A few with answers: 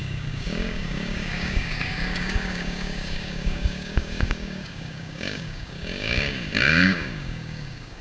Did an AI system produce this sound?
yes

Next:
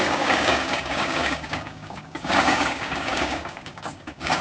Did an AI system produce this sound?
yes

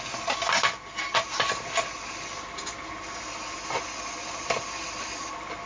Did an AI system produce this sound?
no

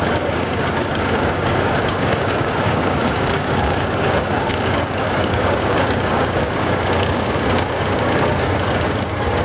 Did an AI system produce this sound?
yes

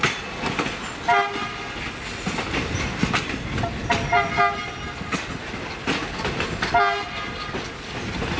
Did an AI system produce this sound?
no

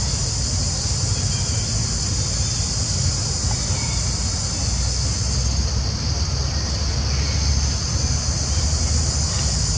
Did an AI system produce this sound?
no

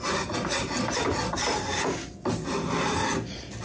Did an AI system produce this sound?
no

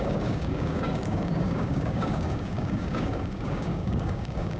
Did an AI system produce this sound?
yes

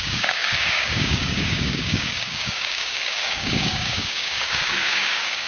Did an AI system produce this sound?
yes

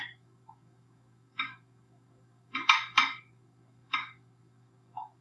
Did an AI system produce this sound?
yes